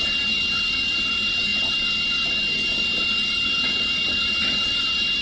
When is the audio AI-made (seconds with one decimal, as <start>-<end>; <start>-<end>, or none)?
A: none